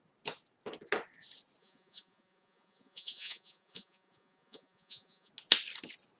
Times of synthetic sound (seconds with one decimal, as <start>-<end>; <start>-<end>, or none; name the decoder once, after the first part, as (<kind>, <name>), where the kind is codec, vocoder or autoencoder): 1.6-5.3 (vocoder, Vocos)